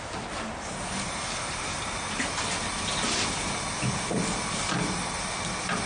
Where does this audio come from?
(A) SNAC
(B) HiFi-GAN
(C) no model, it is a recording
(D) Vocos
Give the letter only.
C